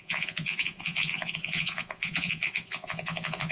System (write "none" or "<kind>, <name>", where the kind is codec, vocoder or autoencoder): vocoder, Vocos